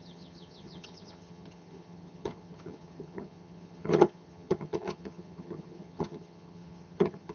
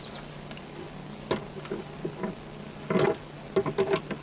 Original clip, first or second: second